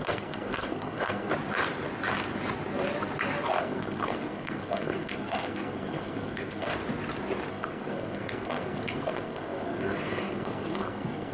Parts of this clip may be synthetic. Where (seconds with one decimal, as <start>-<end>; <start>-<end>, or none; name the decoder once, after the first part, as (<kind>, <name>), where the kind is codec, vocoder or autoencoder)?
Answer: 0.0-1.3 (codec, SNAC); 3.6-6.7; 7.5-11.3

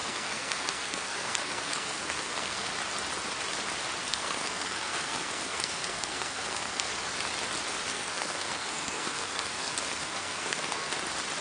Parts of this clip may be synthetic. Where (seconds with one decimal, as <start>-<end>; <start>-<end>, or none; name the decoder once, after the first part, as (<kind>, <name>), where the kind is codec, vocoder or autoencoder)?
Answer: 0.0-2.7 (codec, SNAC); 4.0-6.9; 7.9-10.9

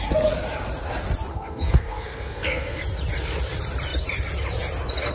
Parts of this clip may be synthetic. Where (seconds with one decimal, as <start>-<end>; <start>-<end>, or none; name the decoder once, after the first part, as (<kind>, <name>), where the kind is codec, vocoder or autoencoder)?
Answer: 1.3-2.8 (codec, SNAC)

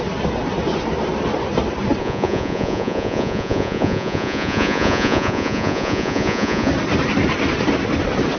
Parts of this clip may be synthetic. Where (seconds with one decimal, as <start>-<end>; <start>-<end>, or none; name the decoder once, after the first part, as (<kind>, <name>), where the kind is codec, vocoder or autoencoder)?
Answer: 2.0-6.7 (vocoder, Vocos)

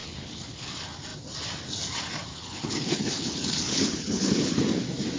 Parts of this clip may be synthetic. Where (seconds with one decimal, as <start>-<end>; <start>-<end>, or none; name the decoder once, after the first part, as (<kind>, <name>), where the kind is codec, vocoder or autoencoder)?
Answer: 0.0-0.7 (codec, HILCodec); 2.3-4.6

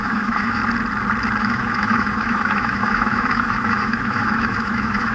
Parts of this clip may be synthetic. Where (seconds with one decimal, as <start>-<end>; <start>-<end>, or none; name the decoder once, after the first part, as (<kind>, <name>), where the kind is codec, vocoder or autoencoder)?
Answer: 0.0-0.6 (autoencoder, DAC-VAE); 1.4-5.1